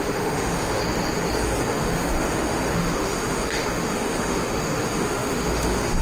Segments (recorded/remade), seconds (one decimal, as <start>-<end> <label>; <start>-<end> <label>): 0.0-0.8 remade; 0.8-1.6 recorded; 1.6-6.0 remade